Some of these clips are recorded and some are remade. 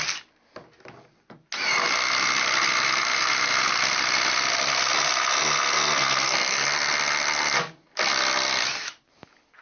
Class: recorded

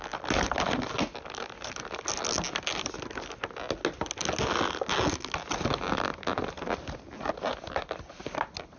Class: recorded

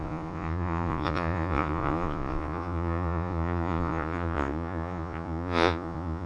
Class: remade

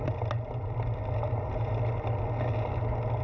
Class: recorded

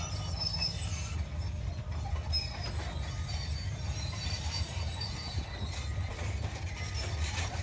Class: recorded